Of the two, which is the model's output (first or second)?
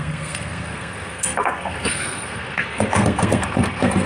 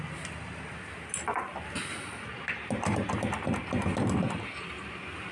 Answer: first